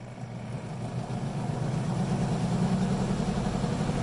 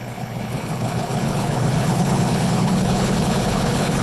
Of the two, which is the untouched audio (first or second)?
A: first